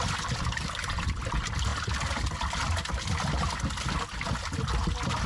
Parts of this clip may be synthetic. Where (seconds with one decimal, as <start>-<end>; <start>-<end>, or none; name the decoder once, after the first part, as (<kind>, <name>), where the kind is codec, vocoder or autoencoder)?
none